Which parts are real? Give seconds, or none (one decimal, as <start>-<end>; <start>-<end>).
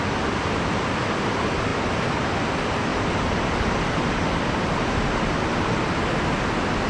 0.0-6.9